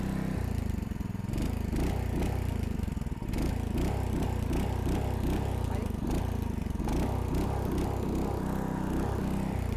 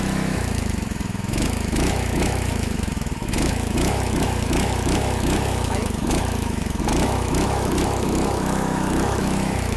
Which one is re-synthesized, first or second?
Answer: second